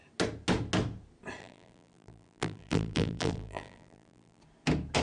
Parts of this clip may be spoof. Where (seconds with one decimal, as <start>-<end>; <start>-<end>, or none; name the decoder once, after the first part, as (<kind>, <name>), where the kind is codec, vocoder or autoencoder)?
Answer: 1.4-4.4 (vocoder, BigVGAN v2)